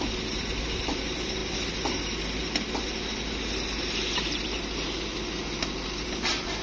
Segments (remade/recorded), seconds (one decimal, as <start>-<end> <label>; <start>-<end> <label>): 0.0-6.6 recorded